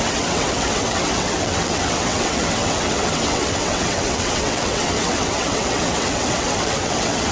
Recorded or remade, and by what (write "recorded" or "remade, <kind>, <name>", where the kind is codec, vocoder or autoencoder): remade, vocoder, WaveNeXt